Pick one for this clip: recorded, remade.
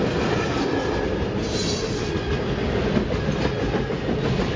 recorded